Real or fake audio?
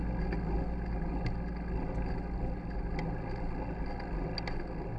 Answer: real